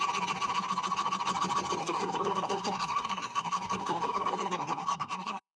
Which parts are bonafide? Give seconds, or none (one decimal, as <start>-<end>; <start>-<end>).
0.0-1.8